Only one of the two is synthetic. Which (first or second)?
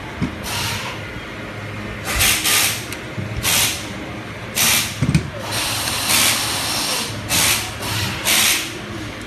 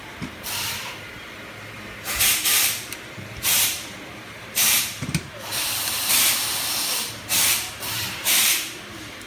second